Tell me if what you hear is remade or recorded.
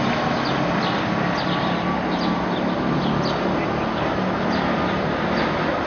recorded